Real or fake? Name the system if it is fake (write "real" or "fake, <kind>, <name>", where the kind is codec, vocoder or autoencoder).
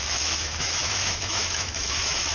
fake, autoencoder, DAC-VAE